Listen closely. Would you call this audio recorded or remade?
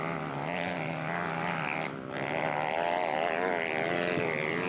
recorded